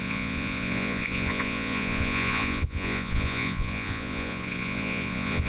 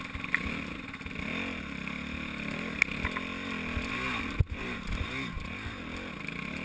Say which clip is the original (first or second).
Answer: second